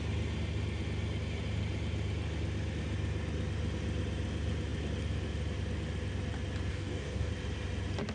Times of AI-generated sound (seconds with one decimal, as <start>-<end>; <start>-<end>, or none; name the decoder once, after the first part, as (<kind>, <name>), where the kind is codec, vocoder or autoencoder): 6.7-7.3 (codec, DAC)